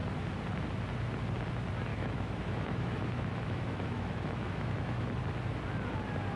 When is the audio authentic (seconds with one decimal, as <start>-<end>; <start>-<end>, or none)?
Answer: 0.0-1.9; 5.2-6.4